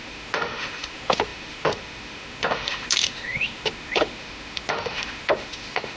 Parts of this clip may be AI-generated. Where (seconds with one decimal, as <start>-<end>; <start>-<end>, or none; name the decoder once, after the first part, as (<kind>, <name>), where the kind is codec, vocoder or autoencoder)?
0.0-6.0 (autoencoder, DAC-VAE)